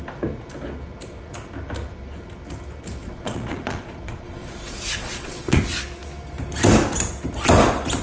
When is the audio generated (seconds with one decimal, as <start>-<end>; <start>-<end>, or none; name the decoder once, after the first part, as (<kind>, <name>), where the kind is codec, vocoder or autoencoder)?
3.0-5.6 (vocoder, Vocos)